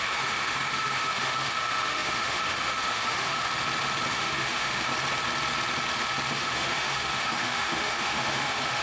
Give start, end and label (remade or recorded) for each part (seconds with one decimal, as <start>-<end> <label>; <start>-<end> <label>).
0.0-3.5 remade; 3.5-4.1 recorded; 4.1-4.9 remade; 4.9-6.3 recorded; 6.3-8.8 remade